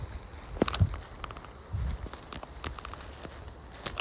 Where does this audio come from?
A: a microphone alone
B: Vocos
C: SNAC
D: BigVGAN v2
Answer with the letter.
A